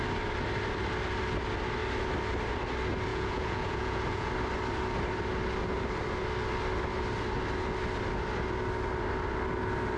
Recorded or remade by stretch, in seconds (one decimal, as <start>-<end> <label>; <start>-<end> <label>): 0.0-3.1 recorded; 3.1-4.3 remade; 4.3-10.0 recorded